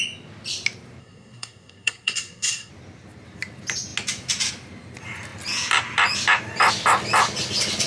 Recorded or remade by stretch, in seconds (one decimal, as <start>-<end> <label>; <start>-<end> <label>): 0.0-1.0 recorded; 1.0-2.7 remade; 2.7-7.9 recorded

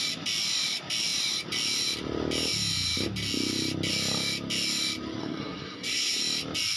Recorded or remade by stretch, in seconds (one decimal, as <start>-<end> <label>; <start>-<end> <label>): 0.0-5.2 recorded; 5.2-6.2 remade; 6.2-6.8 recorded

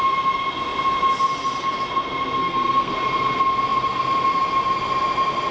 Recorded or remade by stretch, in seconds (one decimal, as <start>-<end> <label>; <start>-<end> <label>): 0.0-2.4 recorded; 2.4-2.9 remade; 2.9-5.5 recorded

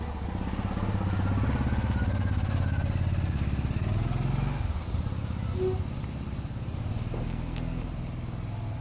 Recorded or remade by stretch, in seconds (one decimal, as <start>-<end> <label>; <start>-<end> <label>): 0.0-7.3 recorded; 7.3-7.8 remade; 7.8-8.8 recorded

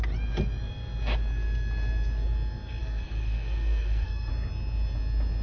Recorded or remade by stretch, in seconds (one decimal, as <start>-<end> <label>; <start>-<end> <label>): 0.0-2.8 recorded; 2.8-4.3 remade; 4.3-5.4 recorded

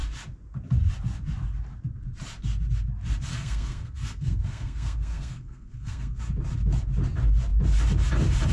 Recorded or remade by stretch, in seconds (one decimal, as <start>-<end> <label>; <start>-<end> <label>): 0.0-3.3 recorded; 3.3-6.2 remade; 6.2-8.5 recorded

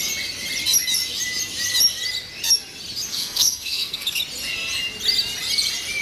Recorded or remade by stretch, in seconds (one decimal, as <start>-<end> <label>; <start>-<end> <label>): 0.0-3.1 recorded; 3.1-4.2 remade; 4.2-6.0 recorded